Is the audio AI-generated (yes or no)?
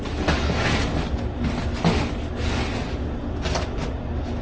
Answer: no